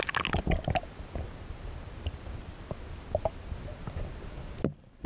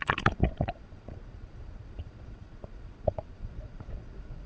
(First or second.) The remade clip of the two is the second